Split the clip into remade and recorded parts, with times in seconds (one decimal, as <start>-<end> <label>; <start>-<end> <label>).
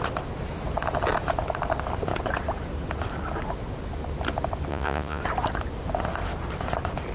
0.0-4.7 recorded; 4.7-5.2 remade; 5.2-7.1 recorded